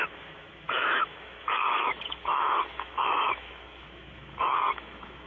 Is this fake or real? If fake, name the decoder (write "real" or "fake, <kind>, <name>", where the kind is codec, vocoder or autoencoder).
fake, autoencoder, DAC-VAE